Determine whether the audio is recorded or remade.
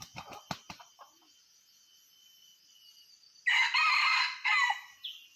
recorded